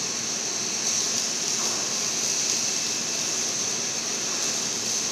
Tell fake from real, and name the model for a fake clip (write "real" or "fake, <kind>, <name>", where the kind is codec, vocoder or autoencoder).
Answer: real